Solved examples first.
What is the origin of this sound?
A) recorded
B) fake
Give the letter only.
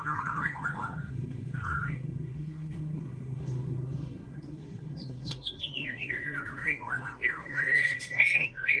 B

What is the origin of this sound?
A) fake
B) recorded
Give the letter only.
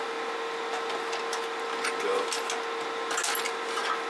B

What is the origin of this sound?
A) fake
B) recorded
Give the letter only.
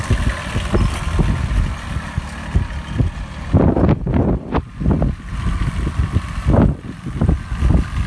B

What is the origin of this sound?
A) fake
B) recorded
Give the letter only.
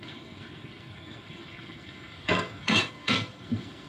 A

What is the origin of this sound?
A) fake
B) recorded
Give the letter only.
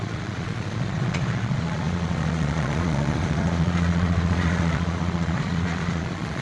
A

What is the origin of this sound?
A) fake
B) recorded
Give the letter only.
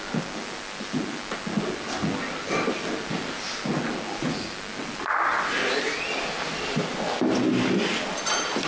B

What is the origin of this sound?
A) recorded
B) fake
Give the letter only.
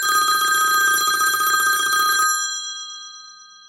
B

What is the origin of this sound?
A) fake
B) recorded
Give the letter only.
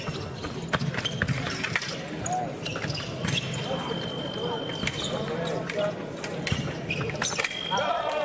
B